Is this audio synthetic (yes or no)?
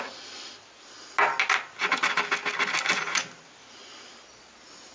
no